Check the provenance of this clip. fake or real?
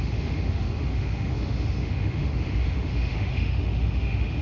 fake